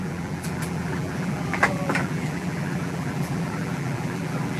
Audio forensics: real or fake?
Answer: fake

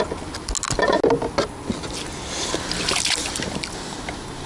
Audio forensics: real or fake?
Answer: real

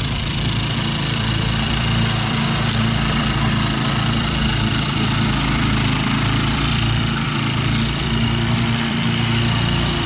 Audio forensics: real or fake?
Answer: fake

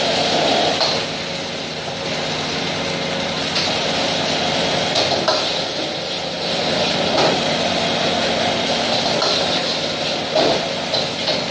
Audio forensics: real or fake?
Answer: real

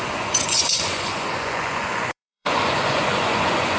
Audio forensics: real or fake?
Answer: fake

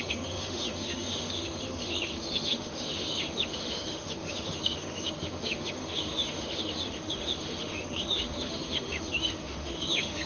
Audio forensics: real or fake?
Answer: fake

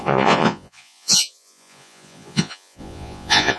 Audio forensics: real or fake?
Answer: fake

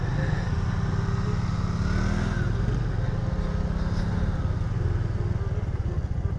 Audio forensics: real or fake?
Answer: real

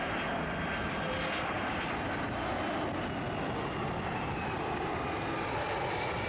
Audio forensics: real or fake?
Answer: real